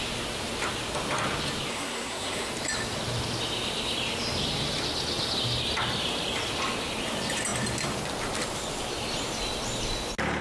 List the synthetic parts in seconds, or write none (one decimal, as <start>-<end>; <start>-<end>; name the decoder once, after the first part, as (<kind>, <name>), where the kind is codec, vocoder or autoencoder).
1.7-2.5 (codec, SNAC)